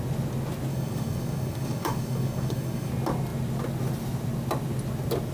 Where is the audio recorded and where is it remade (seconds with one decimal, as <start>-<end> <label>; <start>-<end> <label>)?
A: 0.0-0.7 recorded; 0.7-2.9 remade; 2.9-5.3 recorded